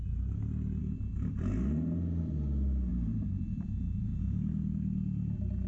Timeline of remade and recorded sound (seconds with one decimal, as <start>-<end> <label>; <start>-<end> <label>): 0.0-2.9 recorded; 2.9-4.2 remade; 4.2-5.7 recorded

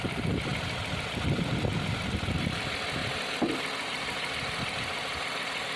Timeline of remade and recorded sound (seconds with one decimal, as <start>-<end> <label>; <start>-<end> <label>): 0.0-3.0 remade; 3.0-5.8 recorded

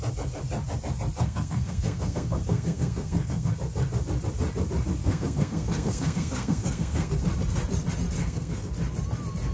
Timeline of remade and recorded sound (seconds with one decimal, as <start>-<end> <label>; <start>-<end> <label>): 0.0-1.2 recorded; 1.2-3.5 remade; 3.5-5.0 recorded; 5.0-7.2 remade; 7.2-8.2 recorded; 8.2-8.7 remade; 8.7-9.5 recorded

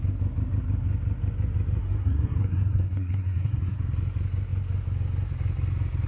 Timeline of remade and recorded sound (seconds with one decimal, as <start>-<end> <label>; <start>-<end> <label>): 0.0-1.8 recorded; 1.8-3.8 remade; 3.8-6.1 recorded

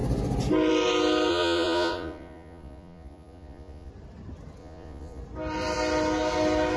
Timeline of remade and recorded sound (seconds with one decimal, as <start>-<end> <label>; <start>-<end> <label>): 0.0-1.3 recorded; 1.3-3.9 remade; 3.9-4.6 recorded; 4.6-5.2 remade; 5.2-6.8 recorded

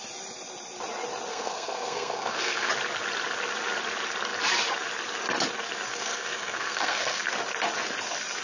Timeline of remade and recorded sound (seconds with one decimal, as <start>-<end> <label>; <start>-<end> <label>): 0.0-1.3 recorded; 1.3-2.7 remade; 2.7-5.9 recorded; 5.9-7.2 remade; 7.2-8.4 recorded